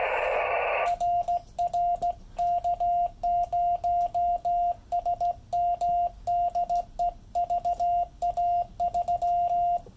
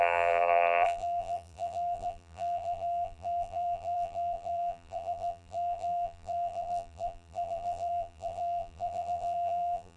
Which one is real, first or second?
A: first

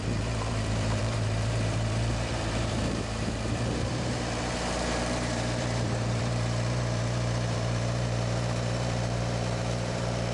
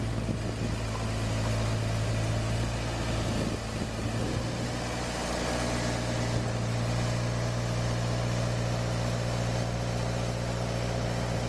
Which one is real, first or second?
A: second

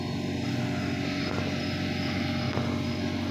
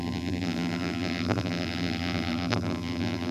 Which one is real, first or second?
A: first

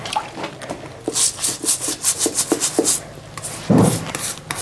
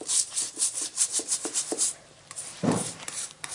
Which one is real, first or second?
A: first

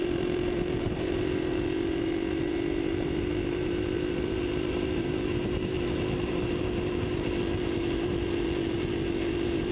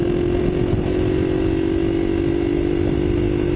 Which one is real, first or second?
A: second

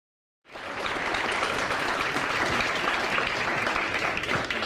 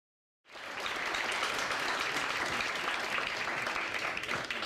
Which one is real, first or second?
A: second